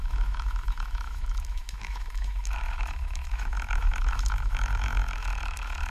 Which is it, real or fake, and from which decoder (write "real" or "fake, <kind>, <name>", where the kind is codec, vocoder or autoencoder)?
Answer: fake, autoencoder, DAC-VAE